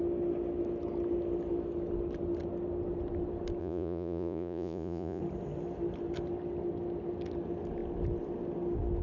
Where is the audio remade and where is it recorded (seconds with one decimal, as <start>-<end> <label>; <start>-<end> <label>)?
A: 0.0-3.6 recorded; 3.6-5.2 remade; 5.2-9.0 recorded